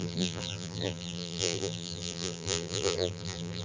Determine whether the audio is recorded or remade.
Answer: remade